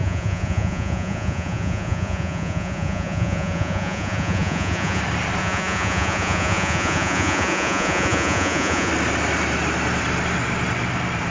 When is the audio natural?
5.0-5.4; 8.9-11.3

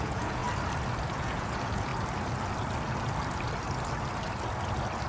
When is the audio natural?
0.4-1.1; 1.9-5.1

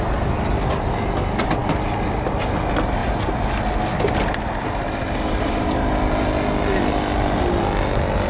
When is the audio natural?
0.0-8.3